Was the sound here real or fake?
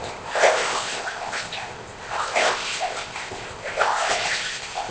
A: fake